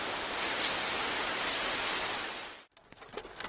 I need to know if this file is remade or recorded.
recorded